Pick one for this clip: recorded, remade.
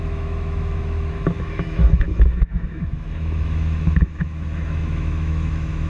remade